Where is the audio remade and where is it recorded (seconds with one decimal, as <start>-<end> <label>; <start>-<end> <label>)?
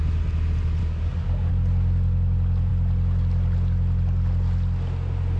0.0-0.8 recorded; 0.8-1.5 remade; 1.5-5.4 recorded